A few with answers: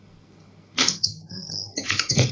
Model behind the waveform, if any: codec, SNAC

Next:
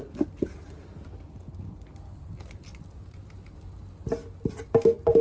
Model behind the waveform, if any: none